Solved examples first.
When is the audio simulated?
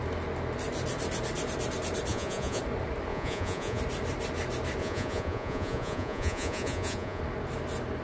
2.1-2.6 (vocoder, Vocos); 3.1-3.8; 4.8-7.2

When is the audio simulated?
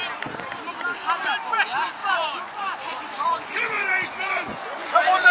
2.0-5.3 (vocoder, Vocos)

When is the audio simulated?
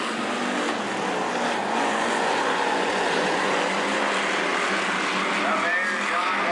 1.6-4.1 (vocoder, Vocos)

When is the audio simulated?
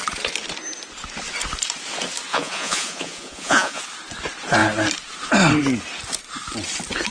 2.3-3.8 (vocoder, Vocos)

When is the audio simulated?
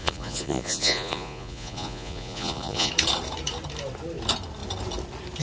0.0-2.9 (vocoder, Vocos)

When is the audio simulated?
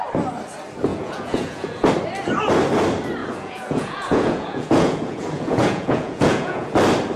0.9-1.9 (vocoder, Vocos); 3.2-6.7